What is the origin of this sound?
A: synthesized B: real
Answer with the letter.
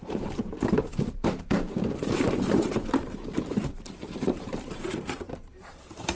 A